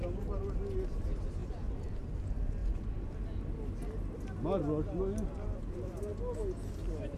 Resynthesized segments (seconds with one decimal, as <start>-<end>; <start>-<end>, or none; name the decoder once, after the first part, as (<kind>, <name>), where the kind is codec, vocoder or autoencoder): 1.4-2.2 (vocoder, BigVGAN v2); 2.6-3.2